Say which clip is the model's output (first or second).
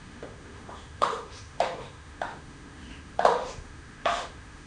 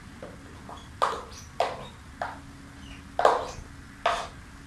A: first